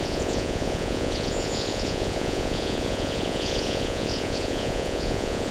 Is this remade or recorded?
remade